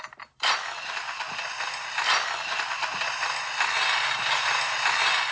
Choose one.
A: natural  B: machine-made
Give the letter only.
A